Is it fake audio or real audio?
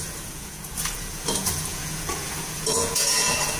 fake